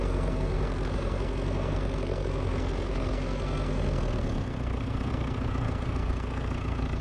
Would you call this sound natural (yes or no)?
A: no